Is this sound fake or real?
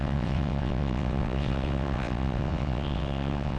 fake